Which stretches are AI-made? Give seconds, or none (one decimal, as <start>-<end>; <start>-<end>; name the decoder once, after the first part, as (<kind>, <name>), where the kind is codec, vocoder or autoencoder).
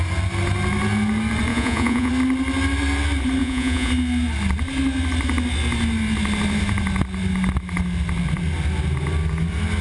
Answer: 1.5-2.1 (vocoder, Vocos); 3.4-3.9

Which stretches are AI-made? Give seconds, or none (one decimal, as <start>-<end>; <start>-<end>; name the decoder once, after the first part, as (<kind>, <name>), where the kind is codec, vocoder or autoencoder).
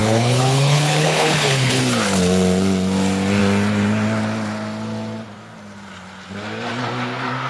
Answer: 0.0-1.8 (codec, HILCodec)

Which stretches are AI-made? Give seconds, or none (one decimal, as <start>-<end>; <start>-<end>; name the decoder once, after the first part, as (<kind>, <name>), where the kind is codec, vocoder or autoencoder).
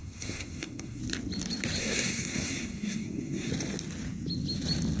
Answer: 0.0-1.0 (codec, SNAC); 1.8-3.5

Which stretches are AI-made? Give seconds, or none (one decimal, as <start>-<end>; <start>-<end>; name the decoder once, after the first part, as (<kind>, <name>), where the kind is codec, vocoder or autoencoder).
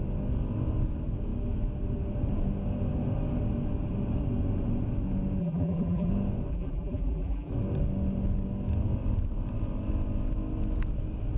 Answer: 5.4-6.1 (vocoder, BigVGAN v2); 6.5-7.5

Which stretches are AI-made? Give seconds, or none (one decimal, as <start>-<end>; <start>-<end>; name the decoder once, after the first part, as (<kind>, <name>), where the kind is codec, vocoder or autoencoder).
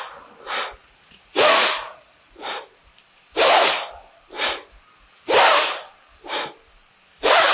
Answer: 0.8-2.6 (vocoder, Vocos)